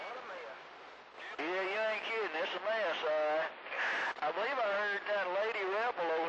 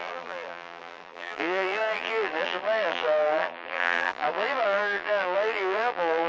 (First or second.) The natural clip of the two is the first